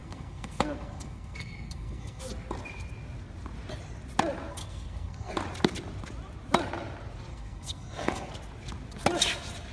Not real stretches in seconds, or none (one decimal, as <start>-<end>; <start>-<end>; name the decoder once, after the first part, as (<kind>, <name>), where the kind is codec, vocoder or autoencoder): 0.0-2.2 (codec, SNAC); 4.5-5.3; 7.3-8.3